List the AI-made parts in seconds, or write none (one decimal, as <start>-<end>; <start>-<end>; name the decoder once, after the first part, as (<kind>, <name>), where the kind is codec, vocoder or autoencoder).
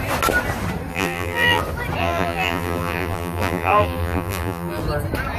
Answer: 0.9-1.6 (vocoder, BigVGAN v2); 2.0-4.8